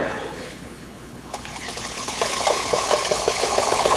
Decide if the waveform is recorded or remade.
remade